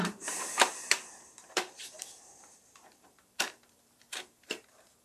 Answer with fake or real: fake